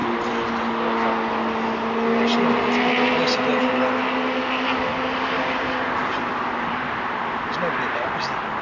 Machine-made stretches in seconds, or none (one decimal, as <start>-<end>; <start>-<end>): none